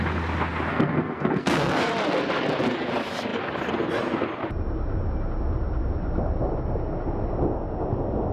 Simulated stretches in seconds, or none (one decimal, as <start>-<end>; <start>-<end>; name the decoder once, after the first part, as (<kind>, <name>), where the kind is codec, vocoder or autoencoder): 0.7-1.9 (codec, SNAC)